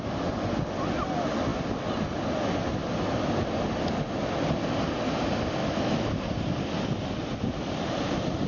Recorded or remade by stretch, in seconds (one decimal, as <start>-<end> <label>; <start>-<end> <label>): 0.0-5.6 recorded; 5.6-6.1 remade; 6.1-8.5 recorded